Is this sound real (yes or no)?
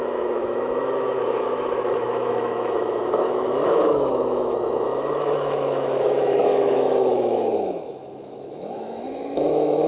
no